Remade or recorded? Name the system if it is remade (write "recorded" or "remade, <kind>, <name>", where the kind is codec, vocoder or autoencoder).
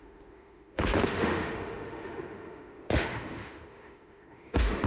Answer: remade, autoencoder, DAC-VAE